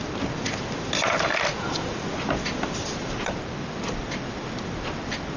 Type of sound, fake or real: real